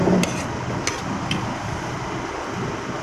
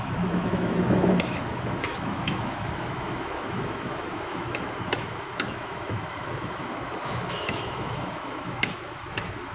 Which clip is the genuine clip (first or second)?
first